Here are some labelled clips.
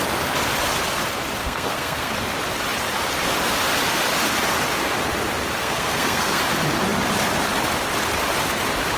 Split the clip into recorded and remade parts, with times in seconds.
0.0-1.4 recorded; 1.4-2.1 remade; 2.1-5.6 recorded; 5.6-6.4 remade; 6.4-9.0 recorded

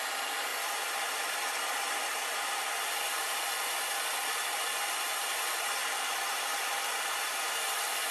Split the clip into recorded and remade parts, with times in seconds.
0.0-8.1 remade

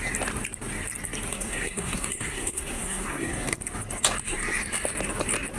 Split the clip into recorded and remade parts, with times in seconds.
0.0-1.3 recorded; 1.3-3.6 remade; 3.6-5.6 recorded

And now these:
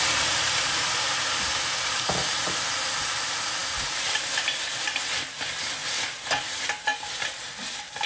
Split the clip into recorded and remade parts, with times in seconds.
0.0-8.1 recorded

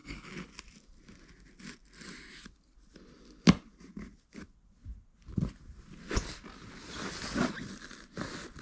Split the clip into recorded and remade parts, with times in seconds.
0.0-0.5 remade; 0.5-8.6 recorded